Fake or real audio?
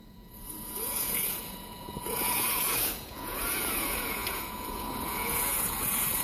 fake